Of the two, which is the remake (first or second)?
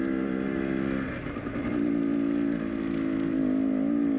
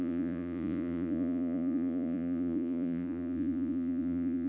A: second